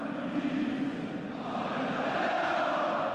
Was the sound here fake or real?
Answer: real